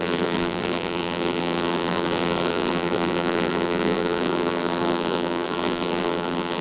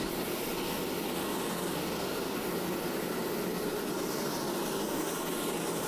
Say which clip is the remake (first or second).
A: first